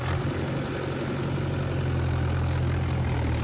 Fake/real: real